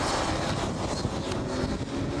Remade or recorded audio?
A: recorded